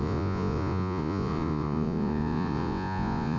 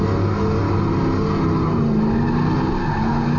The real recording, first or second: second